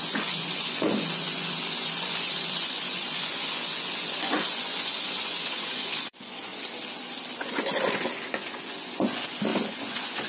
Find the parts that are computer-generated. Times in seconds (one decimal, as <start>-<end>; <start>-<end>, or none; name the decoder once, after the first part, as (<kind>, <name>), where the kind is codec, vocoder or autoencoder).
0.0-6.5 (vocoder, Vocos); 7.3-10.3